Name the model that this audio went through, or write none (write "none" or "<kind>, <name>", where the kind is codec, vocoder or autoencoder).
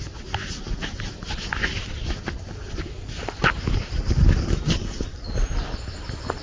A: none